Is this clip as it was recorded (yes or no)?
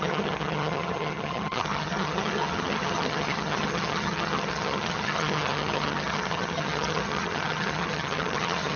no